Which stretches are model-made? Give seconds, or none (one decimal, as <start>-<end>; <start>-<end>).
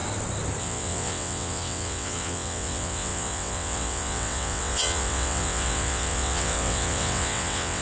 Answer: 0.6-7.8